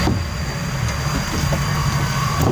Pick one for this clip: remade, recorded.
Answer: recorded